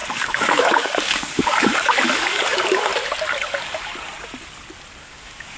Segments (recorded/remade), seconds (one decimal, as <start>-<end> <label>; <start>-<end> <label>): 0.0-2.9 remade; 2.9-3.5 recorded; 3.5-3.9 remade; 3.9-5.0 recorded; 5.0-5.6 remade